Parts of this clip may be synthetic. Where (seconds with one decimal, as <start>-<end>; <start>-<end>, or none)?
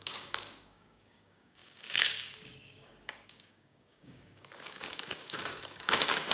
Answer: 0.0-6.3